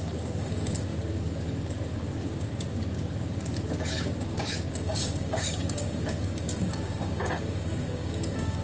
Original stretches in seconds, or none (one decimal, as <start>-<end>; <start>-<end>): none